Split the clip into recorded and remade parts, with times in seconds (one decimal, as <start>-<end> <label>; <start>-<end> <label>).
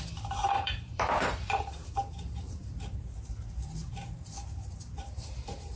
0.0-5.8 remade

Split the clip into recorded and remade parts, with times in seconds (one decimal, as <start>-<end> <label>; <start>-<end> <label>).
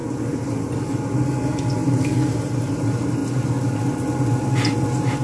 0.0-2.4 recorded; 2.4-3.2 remade; 3.2-5.2 recorded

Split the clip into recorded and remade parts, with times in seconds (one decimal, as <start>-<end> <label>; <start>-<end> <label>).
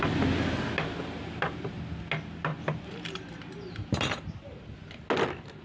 0.0-1.2 recorded; 1.2-1.8 remade; 1.8-2.5 recorded; 2.5-4.7 remade; 4.7-5.6 recorded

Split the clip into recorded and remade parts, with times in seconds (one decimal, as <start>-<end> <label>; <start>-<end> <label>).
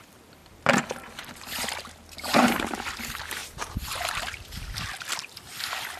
0.0-6.0 recorded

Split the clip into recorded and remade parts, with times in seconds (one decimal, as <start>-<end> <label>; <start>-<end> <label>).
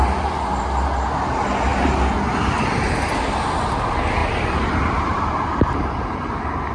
0.0-4.2 recorded; 4.2-6.3 remade; 6.3-6.7 recorded